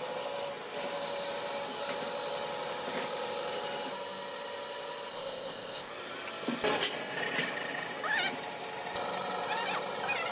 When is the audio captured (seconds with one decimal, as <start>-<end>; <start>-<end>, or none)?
0.0-5.1; 5.9-10.3